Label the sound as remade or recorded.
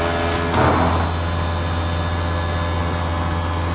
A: recorded